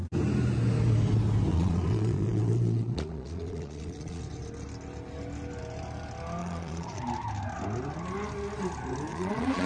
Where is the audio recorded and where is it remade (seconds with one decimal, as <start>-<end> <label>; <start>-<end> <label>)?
0.0-1.5 recorded; 1.5-4.2 remade; 4.2-6.4 recorded; 6.4-7.0 remade; 7.0-9.1 recorded; 9.1-9.7 remade